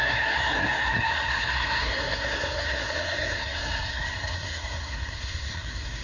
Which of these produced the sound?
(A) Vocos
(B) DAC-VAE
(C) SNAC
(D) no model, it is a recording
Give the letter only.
C